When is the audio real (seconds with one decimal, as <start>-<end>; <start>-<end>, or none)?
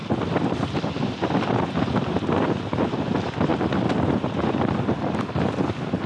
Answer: 0.0-6.1